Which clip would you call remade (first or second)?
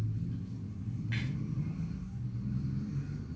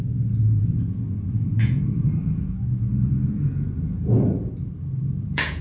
second